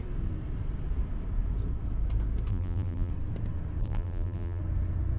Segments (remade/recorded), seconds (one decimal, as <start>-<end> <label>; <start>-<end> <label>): 0.0-2.5 recorded; 2.5-3.1 remade; 3.1-3.8 recorded; 3.8-4.6 remade; 4.6-5.2 recorded